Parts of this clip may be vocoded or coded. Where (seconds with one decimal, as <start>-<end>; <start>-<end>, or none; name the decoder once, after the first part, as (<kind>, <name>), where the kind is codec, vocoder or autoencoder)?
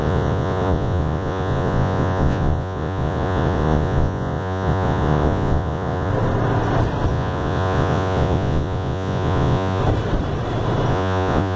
0.0-6.1 (vocoder, Vocos); 7.1-9.8; 10.9-11.6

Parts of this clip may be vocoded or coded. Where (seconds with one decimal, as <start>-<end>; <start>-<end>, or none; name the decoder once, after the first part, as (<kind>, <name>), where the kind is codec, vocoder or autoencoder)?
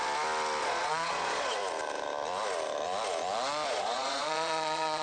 0.6-1.6 (vocoder, Vocos); 3.7-5.0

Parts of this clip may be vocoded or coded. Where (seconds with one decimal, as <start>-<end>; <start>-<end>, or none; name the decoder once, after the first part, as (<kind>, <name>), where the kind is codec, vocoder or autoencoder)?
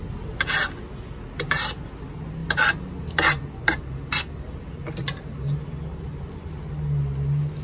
none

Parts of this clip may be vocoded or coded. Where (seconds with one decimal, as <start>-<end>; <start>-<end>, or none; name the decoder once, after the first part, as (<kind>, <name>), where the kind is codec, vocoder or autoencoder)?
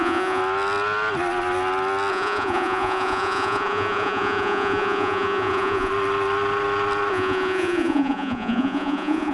0.0-0.4 (vocoder, Vocos); 2.1-5.9; 7.1-9.3